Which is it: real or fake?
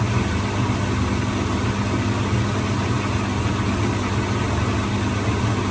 real